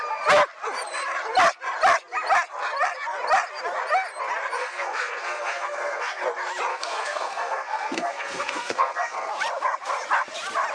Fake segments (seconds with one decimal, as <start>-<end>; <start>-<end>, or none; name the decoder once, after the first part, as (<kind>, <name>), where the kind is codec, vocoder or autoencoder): 4.6-6.2 (codec, SNAC); 6.7-9.3